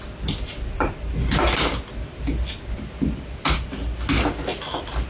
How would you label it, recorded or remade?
recorded